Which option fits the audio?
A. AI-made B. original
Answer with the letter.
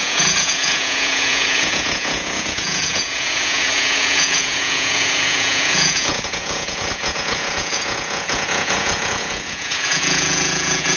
A